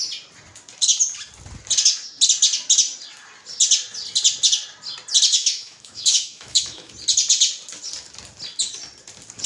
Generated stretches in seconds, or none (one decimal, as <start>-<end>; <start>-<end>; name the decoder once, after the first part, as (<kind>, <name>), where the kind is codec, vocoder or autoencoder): 5.3-6.9 (autoencoder, DAC-VAE)